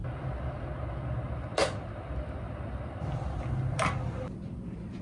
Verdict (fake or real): real